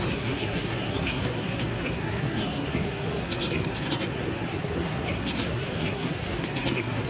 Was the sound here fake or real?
fake